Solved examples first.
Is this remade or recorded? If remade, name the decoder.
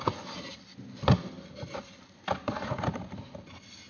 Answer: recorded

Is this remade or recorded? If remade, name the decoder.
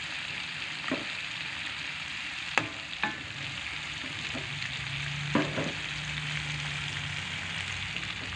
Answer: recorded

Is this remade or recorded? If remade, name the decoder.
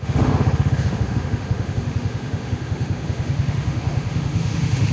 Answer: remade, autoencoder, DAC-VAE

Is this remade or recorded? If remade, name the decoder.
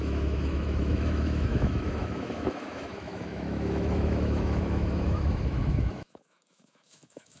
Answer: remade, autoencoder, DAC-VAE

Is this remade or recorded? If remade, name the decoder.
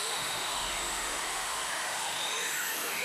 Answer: remade, autoencoder, DAC-VAE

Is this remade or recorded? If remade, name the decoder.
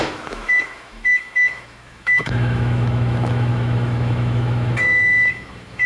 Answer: remade, autoencoder, DAC-VAE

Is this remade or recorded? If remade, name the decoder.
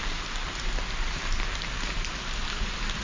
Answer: recorded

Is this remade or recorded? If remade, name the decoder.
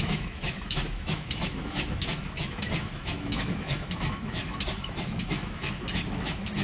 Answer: remade, autoencoder, DAC-VAE